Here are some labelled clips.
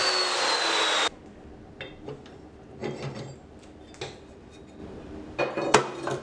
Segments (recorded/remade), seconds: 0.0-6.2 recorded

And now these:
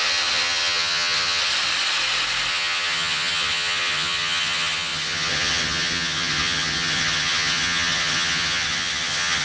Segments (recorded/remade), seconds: 0.0-1.5 remade; 1.5-2.5 recorded; 2.5-9.4 remade

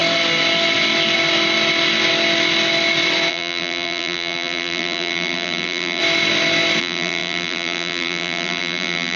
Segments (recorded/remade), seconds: 0.0-3.3 recorded; 3.3-6.0 remade; 6.0-6.8 recorded; 6.8-9.2 remade

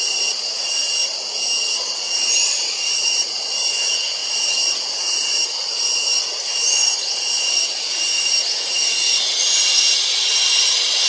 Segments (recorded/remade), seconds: 0.0-1.0 remade; 1.0-1.6 recorded; 1.6-11.1 remade

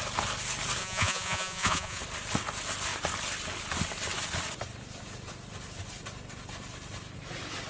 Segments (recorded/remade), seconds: 0.0-0.8 recorded; 0.8-2.0 remade; 2.0-7.7 recorded

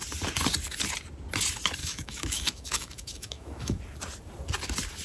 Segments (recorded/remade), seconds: 0.0-1.8 recorded; 1.8-3.8 remade; 3.8-5.0 recorded

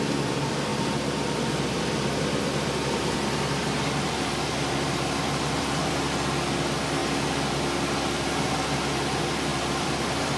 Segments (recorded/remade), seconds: 0.0-9.5 recorded; 9.5-10.4 remade

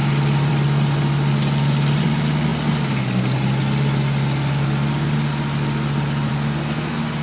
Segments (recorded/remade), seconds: 0.0-7.2 recorded